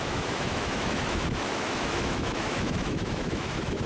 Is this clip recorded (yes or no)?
no